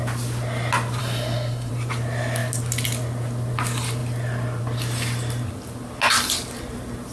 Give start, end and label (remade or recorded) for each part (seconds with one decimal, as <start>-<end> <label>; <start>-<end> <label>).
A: 0.0-1.0 recorded; 1.0-1.7 remade; 1.7-7.1 recorded